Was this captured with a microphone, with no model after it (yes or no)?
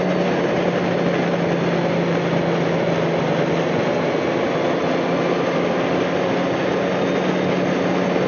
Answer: yes